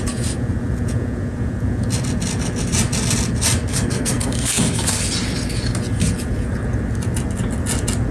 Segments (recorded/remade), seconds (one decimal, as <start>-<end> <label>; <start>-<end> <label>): 0.0-3.7 recorded; 3.7-5.0 remade; 5.0-8.1 recorded